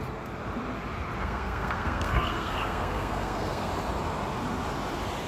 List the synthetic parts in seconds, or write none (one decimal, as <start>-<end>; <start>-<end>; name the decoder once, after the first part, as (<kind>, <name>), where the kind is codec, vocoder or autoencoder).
1.2-3.7 (codec, SNAC)